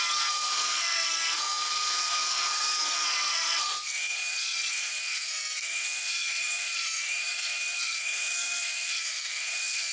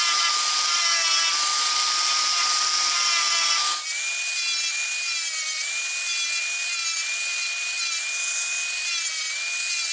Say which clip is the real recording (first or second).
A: second